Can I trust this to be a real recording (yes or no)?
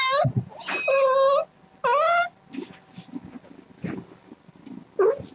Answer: yes